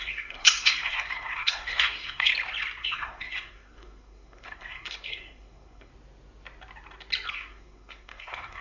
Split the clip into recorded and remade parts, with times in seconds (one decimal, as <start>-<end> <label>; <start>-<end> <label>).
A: 0.0-2.3 remade; 2.3-2.8 recorded; 2.8-5.9 remade; 5.9-7.3 recorded; 7.3-8.6 remade